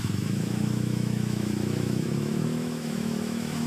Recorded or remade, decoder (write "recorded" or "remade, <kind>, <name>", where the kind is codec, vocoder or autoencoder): remade, autoencoder, DAC-VAE